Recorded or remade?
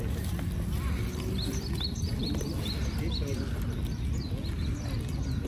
recorded